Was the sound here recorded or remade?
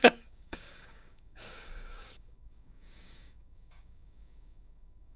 remade